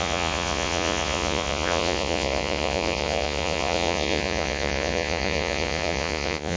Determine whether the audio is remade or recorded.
remade